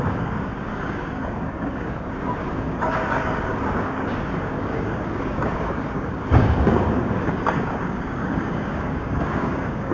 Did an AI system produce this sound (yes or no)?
yes